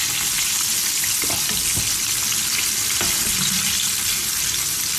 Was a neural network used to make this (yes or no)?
no